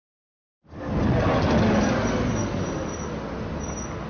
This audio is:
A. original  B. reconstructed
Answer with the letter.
A